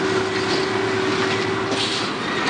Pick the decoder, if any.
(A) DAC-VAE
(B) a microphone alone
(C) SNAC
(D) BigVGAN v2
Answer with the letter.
B